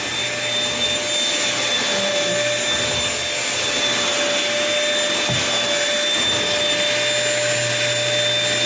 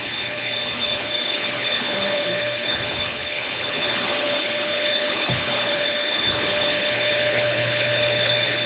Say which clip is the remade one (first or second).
second